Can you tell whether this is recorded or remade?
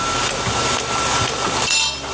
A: recorded